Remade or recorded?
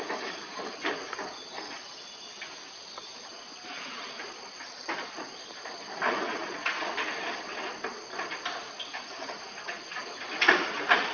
recorded